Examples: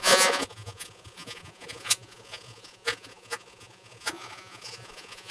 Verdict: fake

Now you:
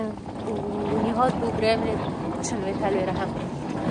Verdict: real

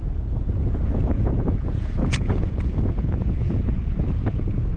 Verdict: fake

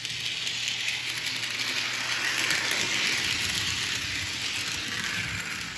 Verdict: real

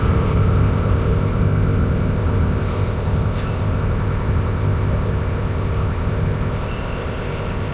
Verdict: fake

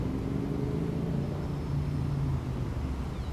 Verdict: real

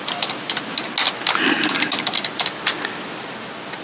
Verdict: real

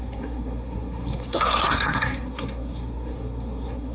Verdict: fake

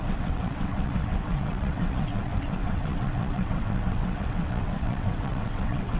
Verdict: fake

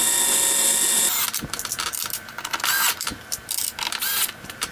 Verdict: real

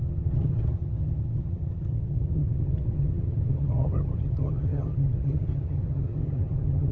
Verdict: fake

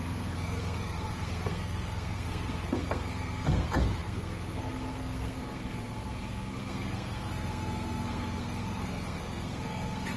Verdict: fake